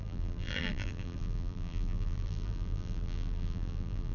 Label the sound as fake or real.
fake